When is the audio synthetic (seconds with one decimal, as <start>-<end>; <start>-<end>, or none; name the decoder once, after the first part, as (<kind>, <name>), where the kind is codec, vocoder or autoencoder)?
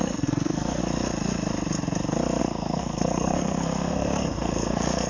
0.0-0.8 (codec, SNAC); 2.4-5.1